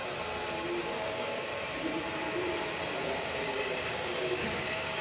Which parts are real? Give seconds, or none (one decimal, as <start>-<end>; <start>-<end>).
0.0-0.8; 1.5-3.4